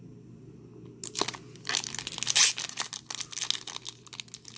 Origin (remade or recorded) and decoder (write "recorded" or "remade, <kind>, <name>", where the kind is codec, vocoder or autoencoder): recorded